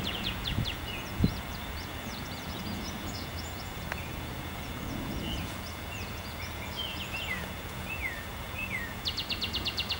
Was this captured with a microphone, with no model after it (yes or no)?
no